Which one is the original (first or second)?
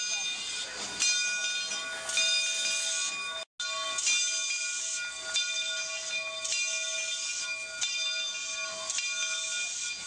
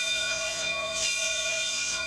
first